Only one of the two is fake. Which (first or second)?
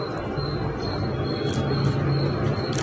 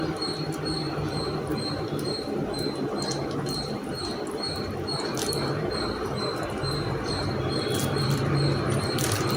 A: second